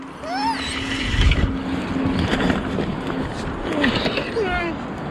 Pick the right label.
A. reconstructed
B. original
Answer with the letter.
B